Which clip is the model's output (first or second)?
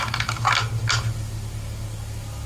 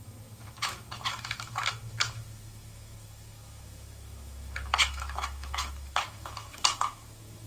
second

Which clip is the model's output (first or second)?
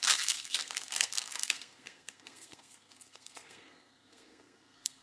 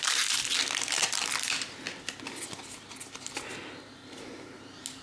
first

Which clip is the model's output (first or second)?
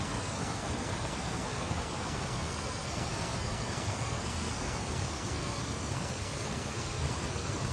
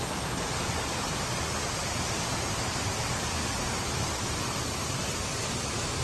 first